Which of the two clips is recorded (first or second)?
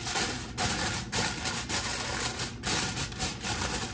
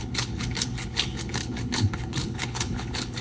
first